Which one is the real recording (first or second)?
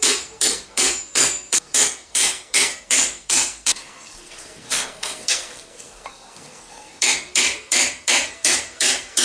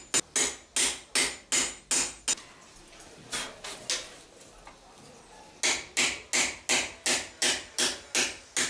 second